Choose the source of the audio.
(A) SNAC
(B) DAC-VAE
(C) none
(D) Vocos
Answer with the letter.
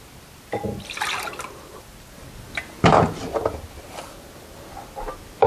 C